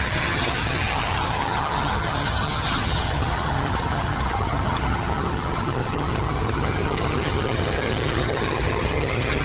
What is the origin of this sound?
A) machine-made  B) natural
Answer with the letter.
A